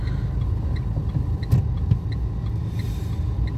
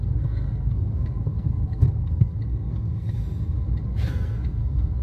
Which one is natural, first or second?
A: first